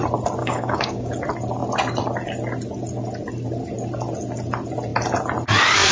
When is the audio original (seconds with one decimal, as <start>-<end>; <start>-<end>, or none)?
0.0-0.4; 1.1-5.9